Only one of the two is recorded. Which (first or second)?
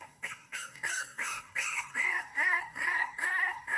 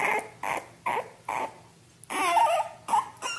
second